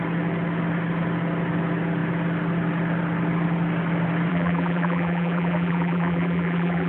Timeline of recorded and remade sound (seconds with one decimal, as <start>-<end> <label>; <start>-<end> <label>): 0.0-4.3 recorded; 4.3-6.9 remade